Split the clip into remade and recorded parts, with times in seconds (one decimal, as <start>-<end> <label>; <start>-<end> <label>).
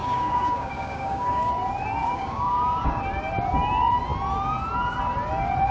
0.0-1.5 remade; 1.5-2.0 recorded; 2.0-3.0 remade; 3.0-5.7 recorded